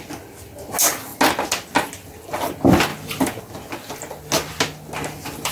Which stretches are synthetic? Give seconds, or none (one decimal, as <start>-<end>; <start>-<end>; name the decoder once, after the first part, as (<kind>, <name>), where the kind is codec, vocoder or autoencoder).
none